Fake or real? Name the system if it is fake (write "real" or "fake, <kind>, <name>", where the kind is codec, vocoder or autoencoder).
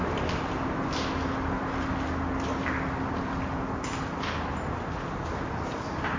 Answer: real